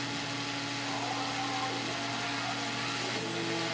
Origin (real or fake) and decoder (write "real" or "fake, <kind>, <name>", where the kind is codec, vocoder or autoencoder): real